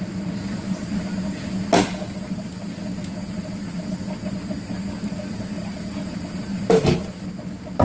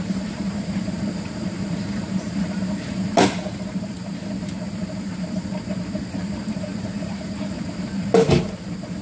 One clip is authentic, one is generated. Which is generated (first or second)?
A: second